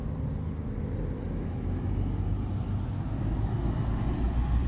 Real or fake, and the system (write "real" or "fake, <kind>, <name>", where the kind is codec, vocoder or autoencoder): real